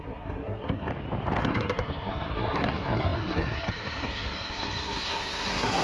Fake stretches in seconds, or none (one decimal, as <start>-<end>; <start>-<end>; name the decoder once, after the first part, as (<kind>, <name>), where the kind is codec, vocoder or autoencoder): 0.0-0.9 (codec, SNAC); 1.4-5.8